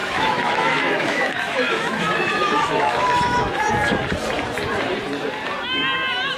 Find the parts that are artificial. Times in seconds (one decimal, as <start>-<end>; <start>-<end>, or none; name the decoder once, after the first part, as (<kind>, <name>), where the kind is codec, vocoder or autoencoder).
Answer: 0.0-3.7 (autoencoder, DAC-VAE)